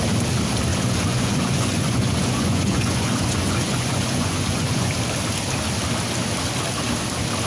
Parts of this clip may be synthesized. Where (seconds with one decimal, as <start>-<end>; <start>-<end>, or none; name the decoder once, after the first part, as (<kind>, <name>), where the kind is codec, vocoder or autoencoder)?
0.7-4.9 (vocoder, Vocos)

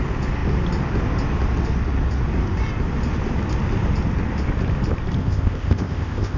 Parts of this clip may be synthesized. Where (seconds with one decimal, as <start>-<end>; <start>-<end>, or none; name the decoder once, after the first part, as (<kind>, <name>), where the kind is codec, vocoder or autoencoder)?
5.2-6.4 (codec, ZipCodec)